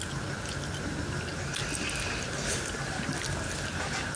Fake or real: real